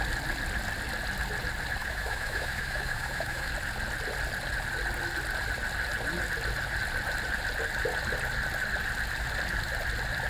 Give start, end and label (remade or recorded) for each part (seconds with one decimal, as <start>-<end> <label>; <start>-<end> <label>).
0.0-1.8 recorded; 1.8-3.5 remade; 3.5-10.3 recorded